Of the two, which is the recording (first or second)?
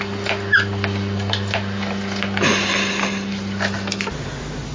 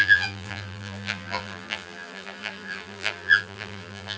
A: first